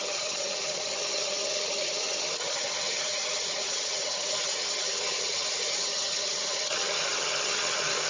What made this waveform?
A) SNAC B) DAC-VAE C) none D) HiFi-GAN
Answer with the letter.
D